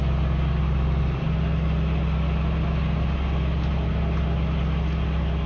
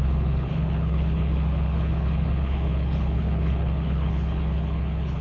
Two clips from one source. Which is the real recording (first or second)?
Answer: first